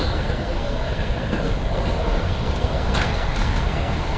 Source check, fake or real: fake